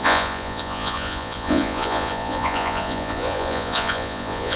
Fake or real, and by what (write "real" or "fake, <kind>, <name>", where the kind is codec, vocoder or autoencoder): fake, vocoder, Vocos